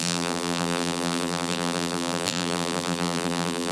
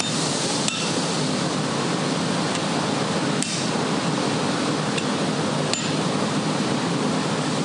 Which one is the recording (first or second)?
second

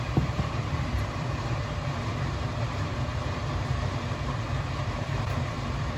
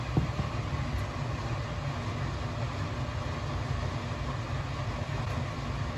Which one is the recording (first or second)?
second